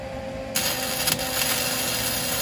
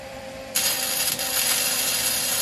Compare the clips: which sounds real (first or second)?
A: first